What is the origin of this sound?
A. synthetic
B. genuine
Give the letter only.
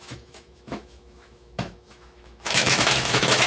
A